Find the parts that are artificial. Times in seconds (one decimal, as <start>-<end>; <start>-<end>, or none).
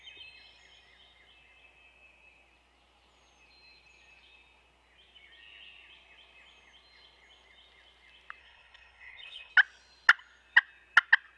8.4-9.5